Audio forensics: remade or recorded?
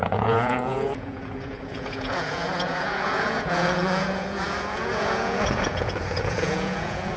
remade